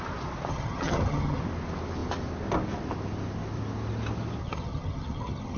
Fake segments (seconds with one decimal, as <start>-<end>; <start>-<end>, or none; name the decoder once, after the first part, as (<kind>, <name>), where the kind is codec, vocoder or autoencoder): 0.5-1.4 (vocoder, HiFi-GAN); 4.4-5.6